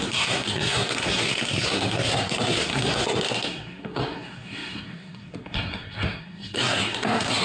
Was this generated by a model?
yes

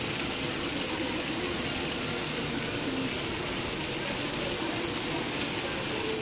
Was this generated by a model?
no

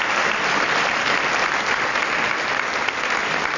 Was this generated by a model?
no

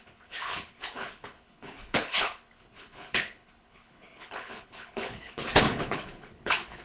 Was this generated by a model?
yes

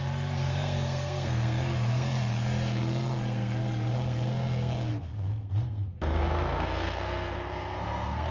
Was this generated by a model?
yes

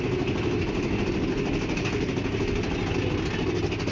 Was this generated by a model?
no